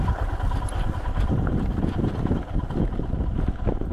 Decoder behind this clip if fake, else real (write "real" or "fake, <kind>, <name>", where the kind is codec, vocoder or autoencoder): real